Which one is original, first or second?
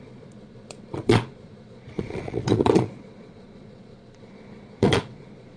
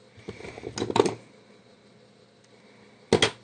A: second